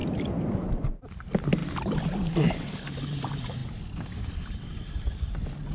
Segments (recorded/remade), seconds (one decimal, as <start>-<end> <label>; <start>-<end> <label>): 0.0-5.7 recorded